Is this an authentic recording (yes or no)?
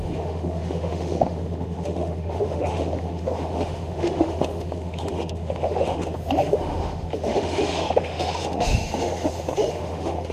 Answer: no